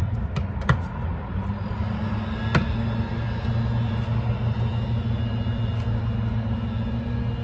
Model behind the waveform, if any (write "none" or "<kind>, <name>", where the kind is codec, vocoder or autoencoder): none